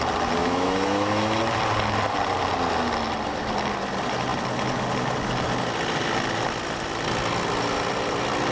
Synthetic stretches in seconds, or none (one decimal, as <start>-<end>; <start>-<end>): 0.4-1.4